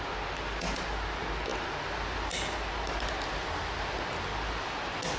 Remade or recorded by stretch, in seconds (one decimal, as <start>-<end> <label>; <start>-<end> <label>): 0.0-5.2 recorded